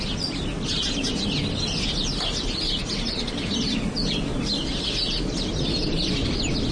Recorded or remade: recorded